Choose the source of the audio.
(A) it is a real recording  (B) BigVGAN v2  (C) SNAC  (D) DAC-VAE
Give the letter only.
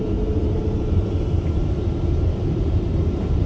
B